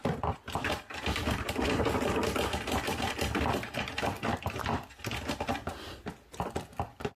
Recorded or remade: recorded